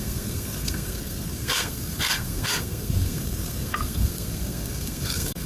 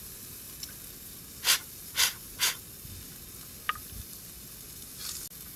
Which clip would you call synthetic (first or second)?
first